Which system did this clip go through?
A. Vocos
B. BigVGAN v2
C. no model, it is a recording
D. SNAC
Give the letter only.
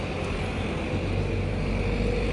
C